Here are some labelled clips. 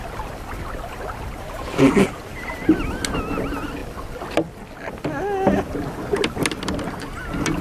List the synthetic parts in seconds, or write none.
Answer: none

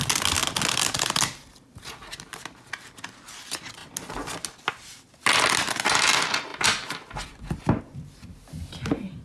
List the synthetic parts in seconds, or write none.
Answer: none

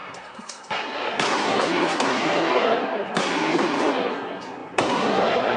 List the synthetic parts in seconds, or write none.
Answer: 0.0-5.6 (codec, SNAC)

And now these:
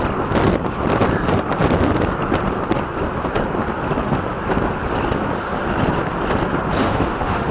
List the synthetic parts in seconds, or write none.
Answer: 6.8-7.5 (autoencoder, DAC-VAE)

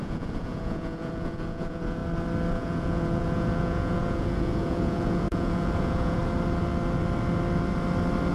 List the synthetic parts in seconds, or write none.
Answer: 0.0-2.0 (vocoder, Vocos); 2.5-6.2

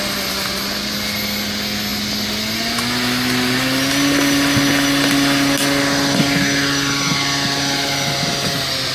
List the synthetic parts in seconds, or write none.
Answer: none

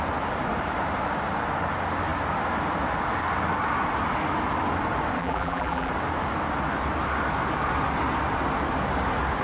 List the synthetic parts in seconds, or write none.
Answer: 5.2-5.9 (vocoder, BigVGAN v2)

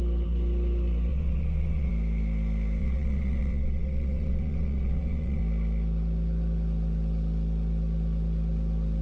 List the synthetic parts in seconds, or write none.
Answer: 1.1-1.9 (vocoder, WaveNeXt); 2.8-5.4